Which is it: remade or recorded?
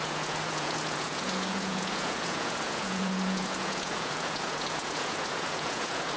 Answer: remade